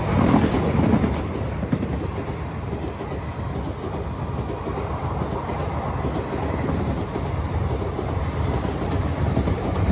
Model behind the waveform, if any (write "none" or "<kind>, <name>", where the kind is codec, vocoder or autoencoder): none